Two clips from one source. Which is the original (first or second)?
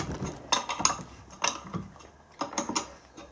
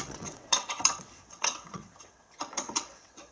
first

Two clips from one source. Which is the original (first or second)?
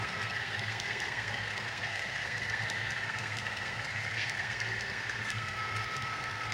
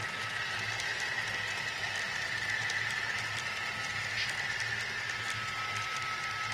second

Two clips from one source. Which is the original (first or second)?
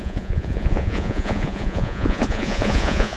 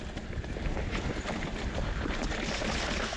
second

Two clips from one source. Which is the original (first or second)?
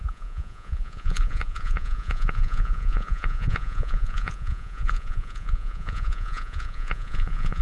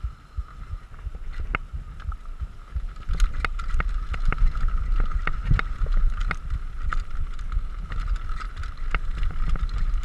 second